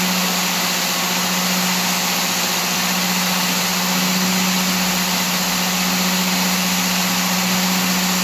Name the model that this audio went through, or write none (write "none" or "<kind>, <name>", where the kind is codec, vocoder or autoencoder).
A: none